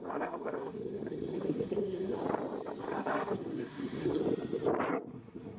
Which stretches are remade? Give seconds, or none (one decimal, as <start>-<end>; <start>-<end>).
0.0-2.2; 2.8-4.2; 4.9-5.6